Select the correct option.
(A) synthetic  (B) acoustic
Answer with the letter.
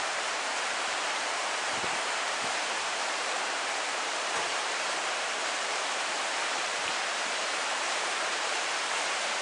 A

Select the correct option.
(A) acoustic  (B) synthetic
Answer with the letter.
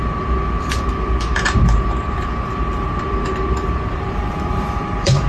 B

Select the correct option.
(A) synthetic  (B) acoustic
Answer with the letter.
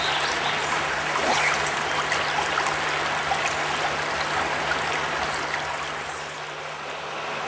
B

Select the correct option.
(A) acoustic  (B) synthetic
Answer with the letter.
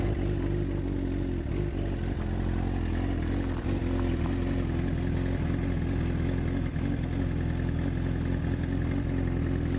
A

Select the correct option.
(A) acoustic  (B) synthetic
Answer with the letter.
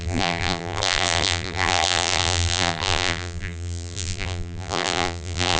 B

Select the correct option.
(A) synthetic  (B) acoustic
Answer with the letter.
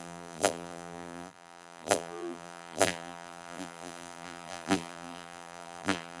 A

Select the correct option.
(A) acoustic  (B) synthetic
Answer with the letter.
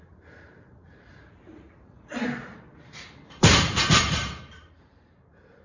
B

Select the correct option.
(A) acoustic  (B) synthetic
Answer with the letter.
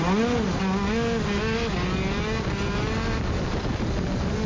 A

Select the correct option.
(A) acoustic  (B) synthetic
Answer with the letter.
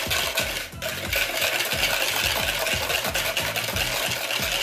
A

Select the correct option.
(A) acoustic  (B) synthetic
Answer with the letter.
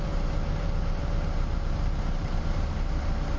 B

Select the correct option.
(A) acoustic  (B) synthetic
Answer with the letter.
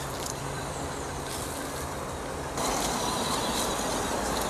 B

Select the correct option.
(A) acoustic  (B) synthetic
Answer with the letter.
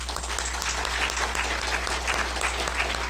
A